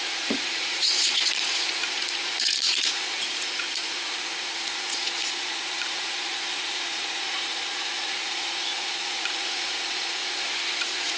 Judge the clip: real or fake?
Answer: fake